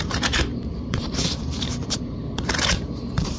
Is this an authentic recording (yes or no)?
no